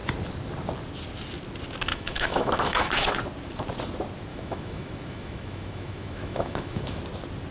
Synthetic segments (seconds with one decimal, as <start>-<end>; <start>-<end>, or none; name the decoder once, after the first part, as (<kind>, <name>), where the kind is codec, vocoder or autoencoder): 1.9-3.1 (autoencoder, DAC-VAE); 4.3-7.0